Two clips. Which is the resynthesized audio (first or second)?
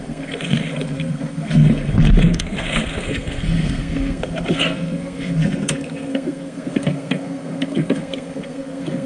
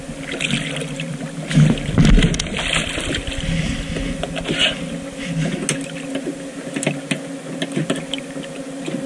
first